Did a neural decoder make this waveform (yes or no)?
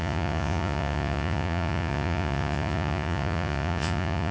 yes